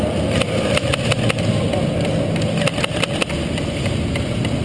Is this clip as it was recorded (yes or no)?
yes